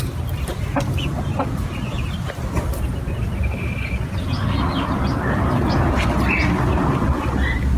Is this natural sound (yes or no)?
yes